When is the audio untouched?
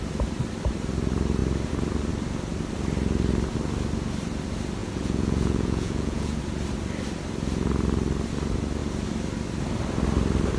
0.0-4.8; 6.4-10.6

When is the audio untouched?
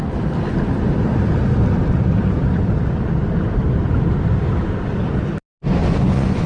0.0-5.8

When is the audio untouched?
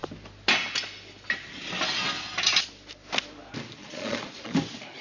0.0-3.8; 4.5-5.0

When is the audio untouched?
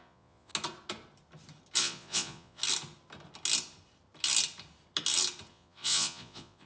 0.5-1.8; 2.6-5.5